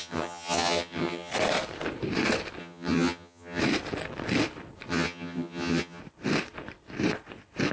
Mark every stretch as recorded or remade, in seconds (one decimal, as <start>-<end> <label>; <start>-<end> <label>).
0.0-1.3 remade; 1.3-2.6 recorded; 2.6-3.6 remade; 3.6-4.9 recorded; 4.9-6.0 remade; 6.0-7.7 recorded